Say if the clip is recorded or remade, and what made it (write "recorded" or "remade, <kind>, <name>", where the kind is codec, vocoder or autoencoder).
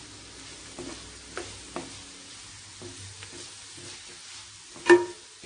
recorded